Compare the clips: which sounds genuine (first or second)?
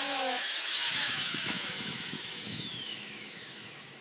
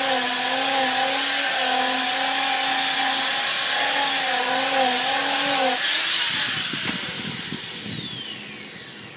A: second